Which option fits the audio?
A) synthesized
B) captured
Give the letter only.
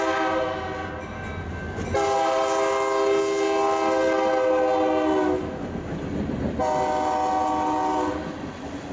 B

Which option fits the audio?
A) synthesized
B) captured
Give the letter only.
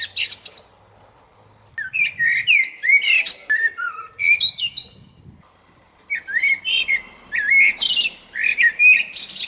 B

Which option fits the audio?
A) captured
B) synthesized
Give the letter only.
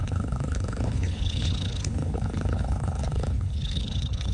B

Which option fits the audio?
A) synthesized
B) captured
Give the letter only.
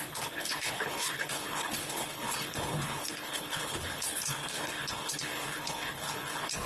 A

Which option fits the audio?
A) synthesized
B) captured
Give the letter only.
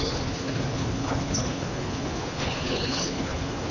A